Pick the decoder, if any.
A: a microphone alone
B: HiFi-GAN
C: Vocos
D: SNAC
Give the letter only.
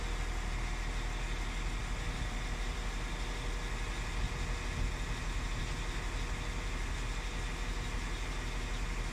A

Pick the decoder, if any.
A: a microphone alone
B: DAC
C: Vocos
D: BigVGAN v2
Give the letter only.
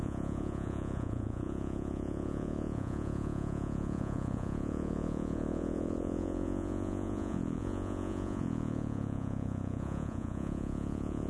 C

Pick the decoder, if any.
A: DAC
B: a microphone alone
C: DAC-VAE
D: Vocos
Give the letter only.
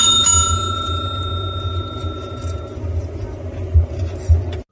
B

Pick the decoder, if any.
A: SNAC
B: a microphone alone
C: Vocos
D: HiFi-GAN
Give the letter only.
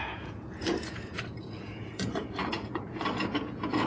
C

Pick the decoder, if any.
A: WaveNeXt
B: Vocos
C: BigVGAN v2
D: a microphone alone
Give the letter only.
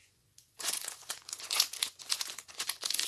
B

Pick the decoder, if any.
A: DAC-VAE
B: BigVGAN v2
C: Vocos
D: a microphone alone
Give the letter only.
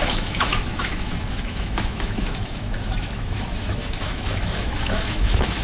A